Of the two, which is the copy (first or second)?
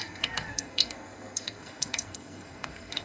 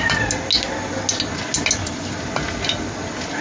first